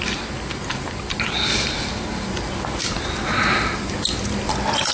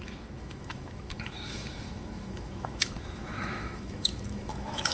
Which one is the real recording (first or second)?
first